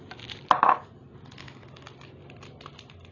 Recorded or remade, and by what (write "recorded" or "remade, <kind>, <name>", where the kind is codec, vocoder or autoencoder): recorded